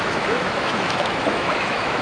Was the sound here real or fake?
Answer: fake